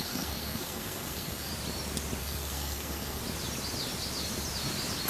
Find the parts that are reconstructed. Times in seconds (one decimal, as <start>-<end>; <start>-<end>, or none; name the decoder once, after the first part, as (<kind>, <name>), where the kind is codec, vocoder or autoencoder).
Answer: 0.0-1.5 (codec, SNAC); 2.2-3.2

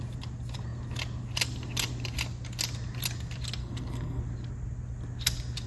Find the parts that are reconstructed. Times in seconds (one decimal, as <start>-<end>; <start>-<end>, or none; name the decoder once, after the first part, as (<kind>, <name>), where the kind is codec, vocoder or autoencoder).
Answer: 3.6-4.2 (codec, SNAC)

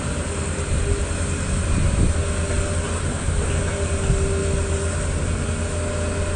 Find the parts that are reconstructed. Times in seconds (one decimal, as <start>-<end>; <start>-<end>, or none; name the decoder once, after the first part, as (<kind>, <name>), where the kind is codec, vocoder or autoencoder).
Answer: none

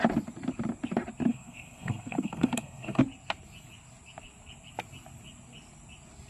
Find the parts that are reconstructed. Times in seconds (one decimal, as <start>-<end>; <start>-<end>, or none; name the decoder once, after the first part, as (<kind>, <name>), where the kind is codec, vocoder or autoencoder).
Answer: 1.3-3.0 (codec, SNAC)

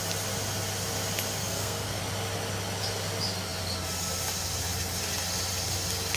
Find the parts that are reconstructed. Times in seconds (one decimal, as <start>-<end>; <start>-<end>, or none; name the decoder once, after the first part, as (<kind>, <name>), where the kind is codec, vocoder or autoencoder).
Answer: 1.4-2.0 (codec, SNAC)

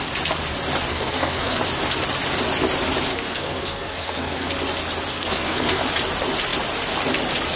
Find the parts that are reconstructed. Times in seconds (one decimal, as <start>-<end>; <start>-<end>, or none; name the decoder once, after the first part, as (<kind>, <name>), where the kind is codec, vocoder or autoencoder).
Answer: 0.9-1.6 (codec, SNAC); 3.1-4.5; 5.1-5.8